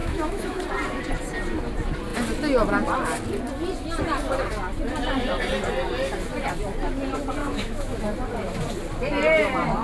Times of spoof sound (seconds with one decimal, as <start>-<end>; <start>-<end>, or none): 0.0-0.6; 7.4-8.0